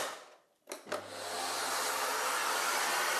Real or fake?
real